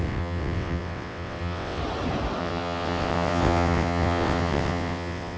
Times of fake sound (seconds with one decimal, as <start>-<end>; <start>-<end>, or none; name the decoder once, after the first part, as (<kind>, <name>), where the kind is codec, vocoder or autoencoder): 0.0-1.8 (vocoder, WaveNeXt); 2.4-5.4